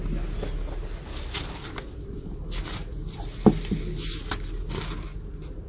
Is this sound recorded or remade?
recorded